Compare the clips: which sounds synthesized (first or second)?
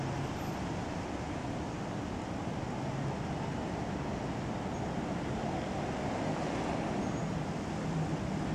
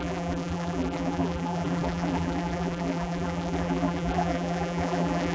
second